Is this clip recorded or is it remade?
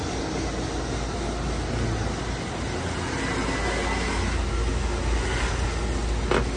recorded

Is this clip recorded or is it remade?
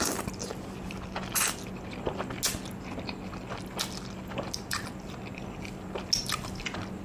recorded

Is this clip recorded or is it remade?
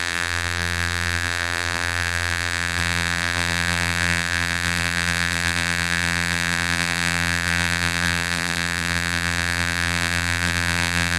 remade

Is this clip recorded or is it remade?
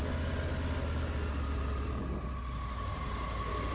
recorded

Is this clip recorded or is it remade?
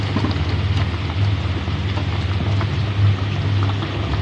recorded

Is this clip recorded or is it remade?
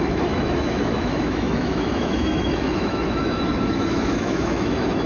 remade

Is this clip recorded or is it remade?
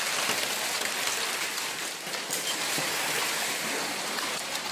recorded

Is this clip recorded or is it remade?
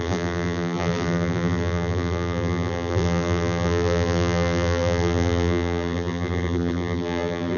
remade